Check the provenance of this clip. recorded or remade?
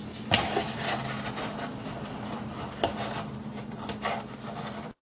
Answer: recorded